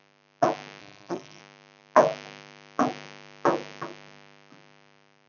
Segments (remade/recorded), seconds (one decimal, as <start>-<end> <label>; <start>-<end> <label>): 0.0-0.8 recorded; 0.8-1.4 remade; 1.4-5.3 recorded